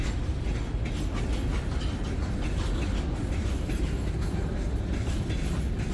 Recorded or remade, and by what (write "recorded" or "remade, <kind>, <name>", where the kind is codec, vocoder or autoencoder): recorded